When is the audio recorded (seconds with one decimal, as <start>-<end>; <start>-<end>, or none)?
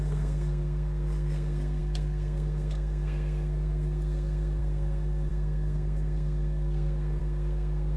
none